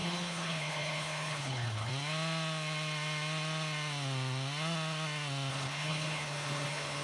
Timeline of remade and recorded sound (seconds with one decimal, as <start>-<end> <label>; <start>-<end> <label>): 0.0-1.9 remade; 1.9-5.5 recorded; 5.5-7.0 remade